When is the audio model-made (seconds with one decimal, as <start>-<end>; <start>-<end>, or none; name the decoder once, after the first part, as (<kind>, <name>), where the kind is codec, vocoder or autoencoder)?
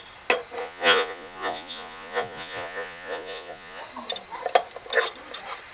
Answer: 0.6-3.8 (vocoder, Vocos)